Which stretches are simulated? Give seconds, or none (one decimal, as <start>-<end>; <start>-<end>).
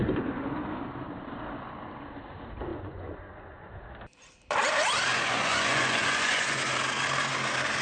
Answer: 2.7-3.7; 5.1-6.7